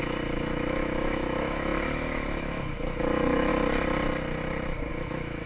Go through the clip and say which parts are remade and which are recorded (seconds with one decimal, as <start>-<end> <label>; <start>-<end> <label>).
0.0-3.5 remade; 3.5-4.9 recorded; 4.9-5.5 remade